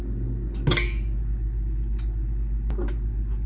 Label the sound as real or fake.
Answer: real